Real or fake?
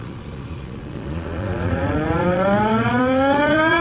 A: fake